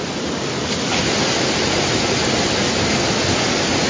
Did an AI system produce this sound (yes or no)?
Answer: no